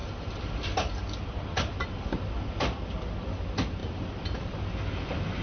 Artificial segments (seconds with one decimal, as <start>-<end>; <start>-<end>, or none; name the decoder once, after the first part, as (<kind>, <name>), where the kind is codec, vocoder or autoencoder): none